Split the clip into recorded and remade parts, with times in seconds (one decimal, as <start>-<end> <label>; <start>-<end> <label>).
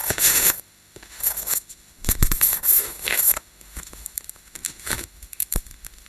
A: 0.0-6.1 remade